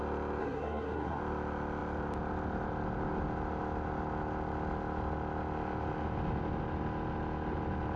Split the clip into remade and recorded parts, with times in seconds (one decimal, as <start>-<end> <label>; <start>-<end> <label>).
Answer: 0.0-0.4 recorded; 0.4-1.2 remade; 1.2-8.0 recorded